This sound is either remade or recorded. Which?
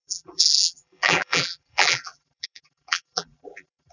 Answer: remade